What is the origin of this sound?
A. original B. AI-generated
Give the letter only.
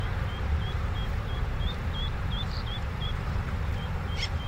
B